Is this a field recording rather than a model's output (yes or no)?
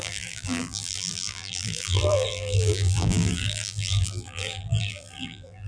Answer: no